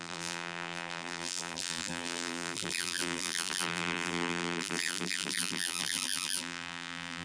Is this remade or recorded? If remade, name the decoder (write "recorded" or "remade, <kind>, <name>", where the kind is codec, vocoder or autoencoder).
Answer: remade, vocoder, BigVGAN v2